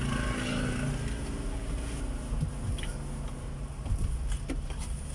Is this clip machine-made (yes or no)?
no